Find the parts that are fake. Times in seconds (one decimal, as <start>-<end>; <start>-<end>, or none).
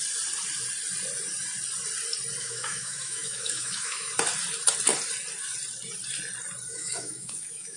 2.4-4.1; 6.7-7.8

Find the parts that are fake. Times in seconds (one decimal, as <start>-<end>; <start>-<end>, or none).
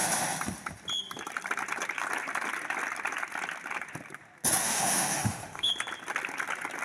4.6-5.7